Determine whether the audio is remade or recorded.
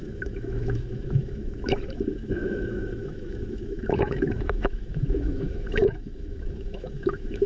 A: remade